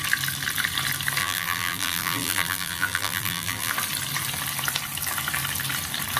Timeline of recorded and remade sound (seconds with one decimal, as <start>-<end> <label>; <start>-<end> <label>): 0.0-1.2 recorded; 1.2-3.7 remade; 3.7-6.2 recorded